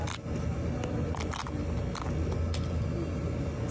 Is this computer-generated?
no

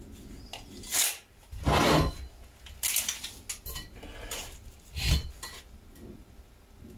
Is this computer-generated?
no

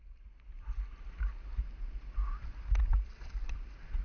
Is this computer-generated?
no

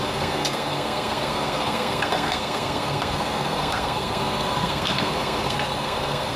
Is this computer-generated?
yes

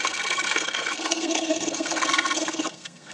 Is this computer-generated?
yes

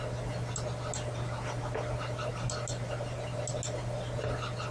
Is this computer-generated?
no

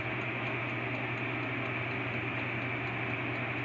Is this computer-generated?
no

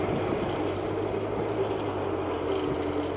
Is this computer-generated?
no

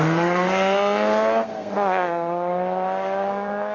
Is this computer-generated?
yes